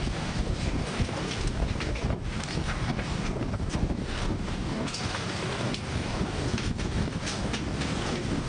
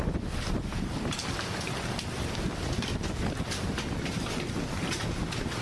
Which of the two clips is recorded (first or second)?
second